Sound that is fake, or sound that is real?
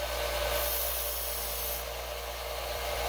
fake